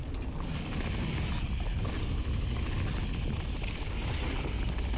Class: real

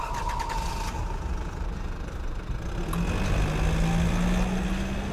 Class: real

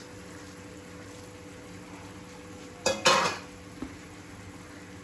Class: real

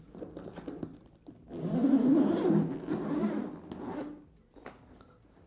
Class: real